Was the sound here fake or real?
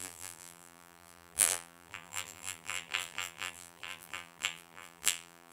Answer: fake